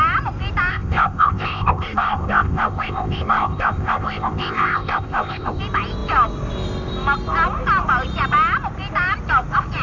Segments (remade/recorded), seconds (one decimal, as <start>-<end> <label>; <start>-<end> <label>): 0.0-0.7 recorded; 0.7-5.6 remade; 5.6-9.8 recorded